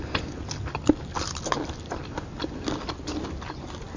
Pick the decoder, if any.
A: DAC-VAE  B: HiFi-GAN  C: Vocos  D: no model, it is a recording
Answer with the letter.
D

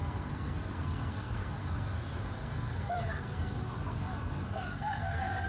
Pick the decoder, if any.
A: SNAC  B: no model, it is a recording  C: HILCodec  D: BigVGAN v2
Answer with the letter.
A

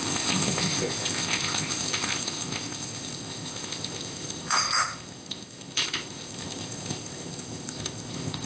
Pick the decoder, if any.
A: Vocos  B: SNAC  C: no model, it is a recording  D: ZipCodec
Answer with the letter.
D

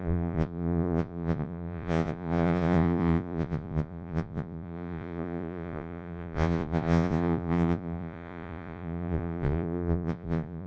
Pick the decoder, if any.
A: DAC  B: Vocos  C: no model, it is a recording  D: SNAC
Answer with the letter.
B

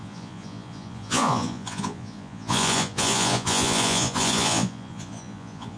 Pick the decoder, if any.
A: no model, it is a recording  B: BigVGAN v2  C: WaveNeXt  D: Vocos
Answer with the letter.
D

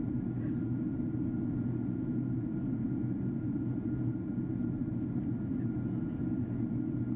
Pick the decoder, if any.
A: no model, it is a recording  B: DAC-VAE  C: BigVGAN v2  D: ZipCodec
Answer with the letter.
A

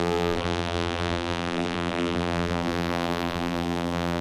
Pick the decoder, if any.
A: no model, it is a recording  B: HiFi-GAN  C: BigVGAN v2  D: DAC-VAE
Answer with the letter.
C